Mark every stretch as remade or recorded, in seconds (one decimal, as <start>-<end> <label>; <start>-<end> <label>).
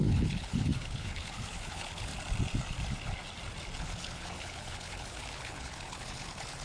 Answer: 0.0-2.1 remade; 2.1-3.8 recorded; 3.8-6.6 remade